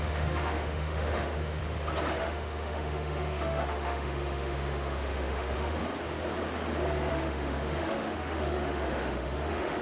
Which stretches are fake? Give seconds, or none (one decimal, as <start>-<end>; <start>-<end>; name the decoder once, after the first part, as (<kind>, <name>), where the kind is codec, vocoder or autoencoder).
0.0-1.6 (autoencoder, DAC-VAE); 2.2-5.8; 7.1-9.8